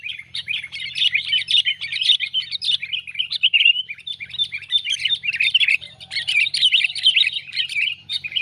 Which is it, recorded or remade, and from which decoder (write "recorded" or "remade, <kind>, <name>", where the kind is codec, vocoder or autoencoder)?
remade, vocoder, BigVGAN v2